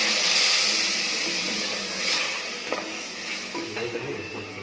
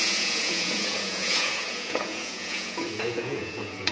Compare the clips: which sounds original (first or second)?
first